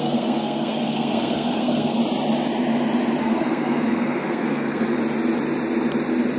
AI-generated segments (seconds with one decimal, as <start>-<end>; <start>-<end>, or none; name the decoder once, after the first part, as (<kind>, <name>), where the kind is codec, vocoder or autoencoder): 0.0-2.0 (codec, SNAC); 3.2-5.0